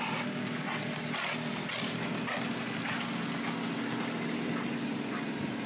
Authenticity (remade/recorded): recorded